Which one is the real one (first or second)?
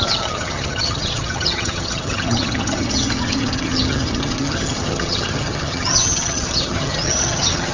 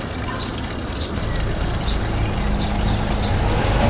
second